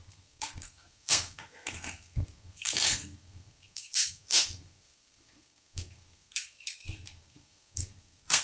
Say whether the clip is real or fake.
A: fake